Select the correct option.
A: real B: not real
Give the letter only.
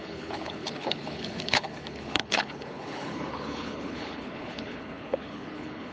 B